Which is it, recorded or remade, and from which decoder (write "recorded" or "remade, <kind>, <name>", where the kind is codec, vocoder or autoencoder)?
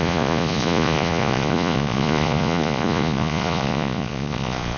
remade, vocoder, Vocos